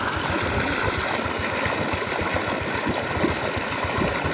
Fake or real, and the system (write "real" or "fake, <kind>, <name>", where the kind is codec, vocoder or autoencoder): real